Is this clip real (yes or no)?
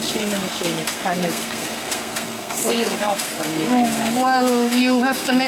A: no